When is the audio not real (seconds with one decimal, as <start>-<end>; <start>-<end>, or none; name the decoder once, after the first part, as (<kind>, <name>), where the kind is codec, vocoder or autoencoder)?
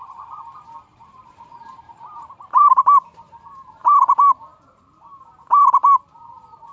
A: 0.9-3.8 (vocoder, BigVGAN v2)